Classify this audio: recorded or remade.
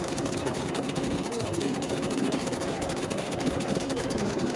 remade